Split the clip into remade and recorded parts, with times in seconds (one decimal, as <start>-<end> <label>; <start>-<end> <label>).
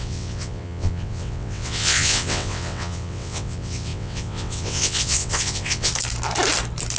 0.0-5.9 remade; 5.9-7.0 recorded